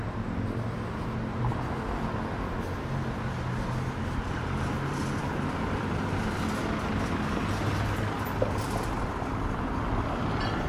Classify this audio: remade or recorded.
recorded